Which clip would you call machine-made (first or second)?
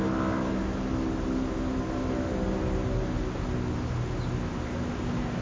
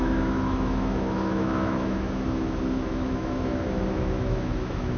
second